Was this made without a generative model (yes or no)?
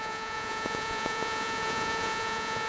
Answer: no